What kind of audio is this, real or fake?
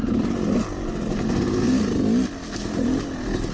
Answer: real